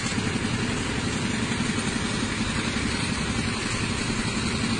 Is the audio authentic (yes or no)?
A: yes